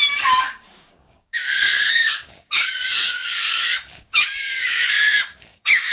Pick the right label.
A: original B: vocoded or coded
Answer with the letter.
B